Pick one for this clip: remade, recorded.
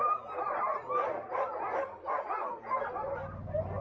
recorded